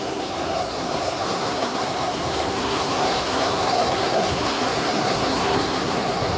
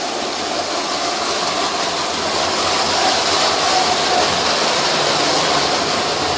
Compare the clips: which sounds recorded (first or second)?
second